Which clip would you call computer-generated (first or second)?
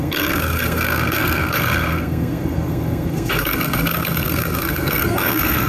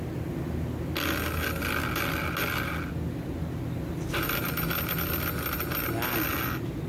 first